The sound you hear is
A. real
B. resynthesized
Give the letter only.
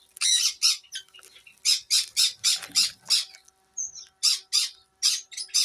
A